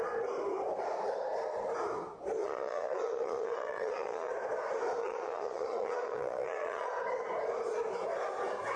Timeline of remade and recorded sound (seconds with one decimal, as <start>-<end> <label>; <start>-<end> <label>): 0.0-2.4 recorded; 2.4-4.3 remade; 4.3-5.0 recorded; 5.0-6.9 remade; 6.9-8.8 recorded